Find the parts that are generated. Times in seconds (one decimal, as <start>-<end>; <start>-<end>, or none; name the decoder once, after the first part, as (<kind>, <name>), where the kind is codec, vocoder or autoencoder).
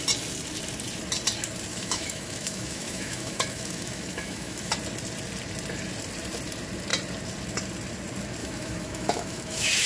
1.7-4.7 (autoencoder, DAC-VAE); 8.4-9.9